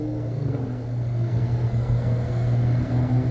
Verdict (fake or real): fake